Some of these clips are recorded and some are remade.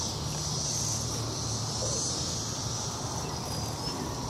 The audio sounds recorded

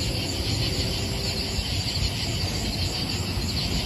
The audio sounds recorded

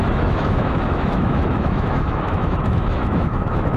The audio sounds remade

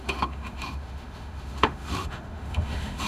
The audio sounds remade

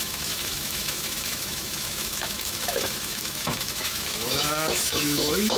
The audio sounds remade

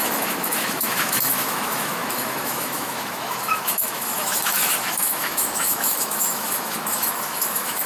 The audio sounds remade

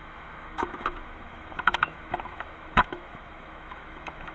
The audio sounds remade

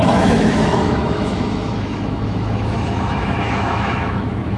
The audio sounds remade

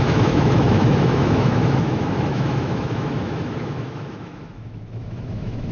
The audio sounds remade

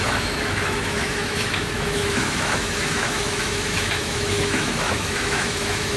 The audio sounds remade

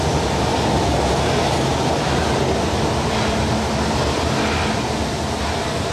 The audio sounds recorded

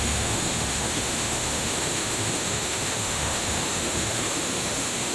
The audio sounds remade